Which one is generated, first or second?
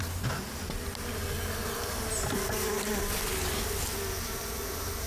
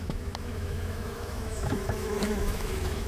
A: second